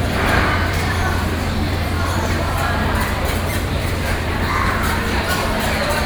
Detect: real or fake fake